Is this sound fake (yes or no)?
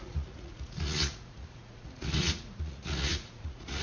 yes